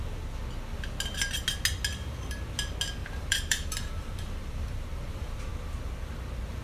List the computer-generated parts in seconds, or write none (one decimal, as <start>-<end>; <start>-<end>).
3.0-5.5